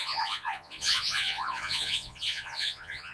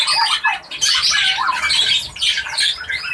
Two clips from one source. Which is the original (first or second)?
second